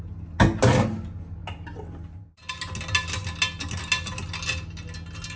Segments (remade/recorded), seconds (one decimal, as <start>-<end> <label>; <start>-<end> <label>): 0.0-5.4 recorded